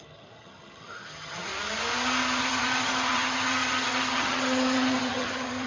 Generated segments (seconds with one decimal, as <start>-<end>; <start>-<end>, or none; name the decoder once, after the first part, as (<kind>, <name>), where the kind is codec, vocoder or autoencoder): 0.0-1.5 (vocoder, HiFi-GAN); 2.4-5.7